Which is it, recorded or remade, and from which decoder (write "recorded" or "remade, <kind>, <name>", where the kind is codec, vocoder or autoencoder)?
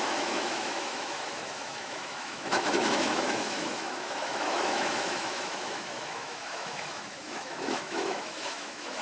remade, autoencoder, DAC-VAE